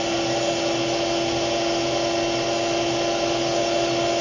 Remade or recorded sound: recorded